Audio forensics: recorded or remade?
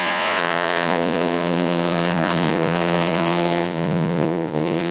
remade